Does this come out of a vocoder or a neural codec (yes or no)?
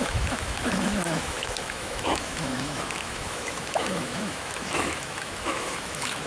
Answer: yes